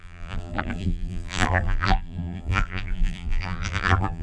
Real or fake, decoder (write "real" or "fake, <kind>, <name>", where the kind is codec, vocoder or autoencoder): fake, vocoder, BigVGAN v2